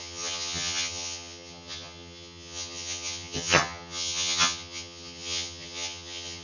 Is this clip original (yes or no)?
no